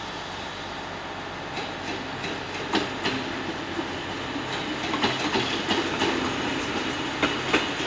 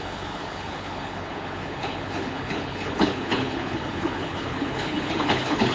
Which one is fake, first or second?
second